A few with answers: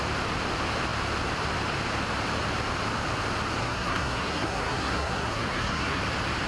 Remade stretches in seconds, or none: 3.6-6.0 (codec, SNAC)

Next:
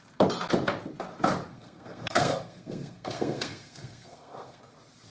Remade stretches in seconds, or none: 1.5-4.6 (codec, SNAC)

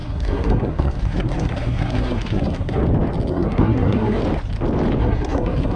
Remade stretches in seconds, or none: 0.0-2.8 (codec, SNAC); 3.3-4.2; 5.0-5.8